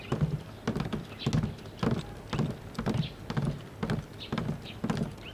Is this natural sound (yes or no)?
yes